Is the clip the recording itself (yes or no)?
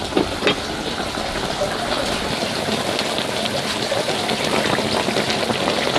yes